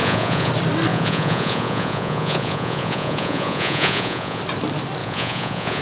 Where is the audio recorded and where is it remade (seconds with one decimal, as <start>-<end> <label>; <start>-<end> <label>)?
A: 0.0-0.5 remade; 0.5-0.9 recorded; 0.9-4.4 remade; 4.4-5.0 recorded; 5.0-5.8 remade